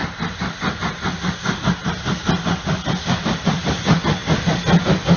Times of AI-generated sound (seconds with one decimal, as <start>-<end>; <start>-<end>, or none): none

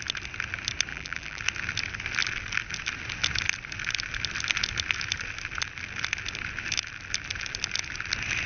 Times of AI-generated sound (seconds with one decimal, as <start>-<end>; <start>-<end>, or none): 0.9-1.4

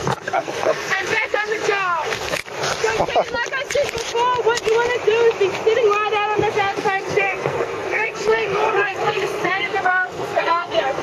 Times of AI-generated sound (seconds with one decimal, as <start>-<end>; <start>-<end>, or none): 0.0-2.4; 6.5-11.0

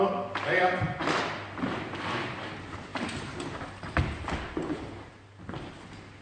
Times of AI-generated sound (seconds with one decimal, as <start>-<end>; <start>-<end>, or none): none

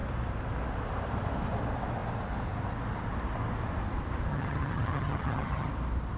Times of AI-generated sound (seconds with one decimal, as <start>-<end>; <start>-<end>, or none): 4.3-5.7

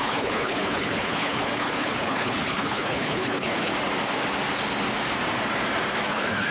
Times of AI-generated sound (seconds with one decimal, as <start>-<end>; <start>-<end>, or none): 0.0-3.7; 6.1-6.5